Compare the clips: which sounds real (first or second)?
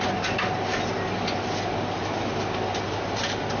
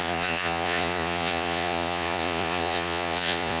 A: first